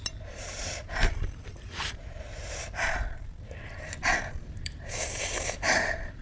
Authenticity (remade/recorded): remade